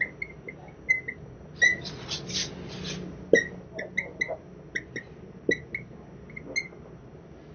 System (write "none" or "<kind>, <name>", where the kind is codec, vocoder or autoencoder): none